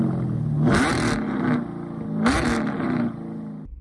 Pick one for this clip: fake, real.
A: real